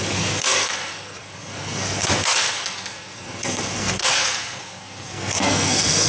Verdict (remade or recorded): remade